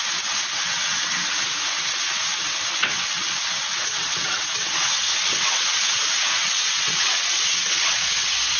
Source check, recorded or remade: remade